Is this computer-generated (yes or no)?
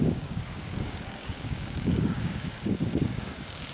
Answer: yes